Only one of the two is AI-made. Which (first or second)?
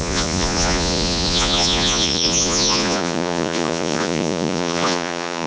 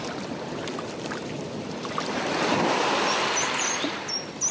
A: first